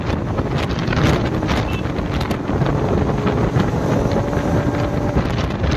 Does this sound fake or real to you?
real